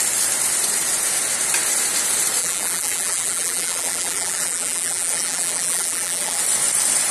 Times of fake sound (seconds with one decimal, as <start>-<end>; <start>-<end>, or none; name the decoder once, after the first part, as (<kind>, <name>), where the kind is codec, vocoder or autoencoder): 2.4-6.4 (vocoder, BigVGAN v2)